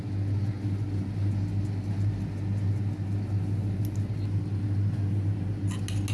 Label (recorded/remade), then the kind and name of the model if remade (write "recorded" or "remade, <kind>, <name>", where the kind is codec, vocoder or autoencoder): recorded